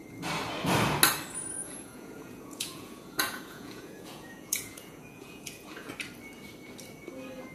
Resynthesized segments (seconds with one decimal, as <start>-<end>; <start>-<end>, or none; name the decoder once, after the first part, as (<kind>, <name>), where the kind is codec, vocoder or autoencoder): 1.6-5.9 (vocoder, Vocos)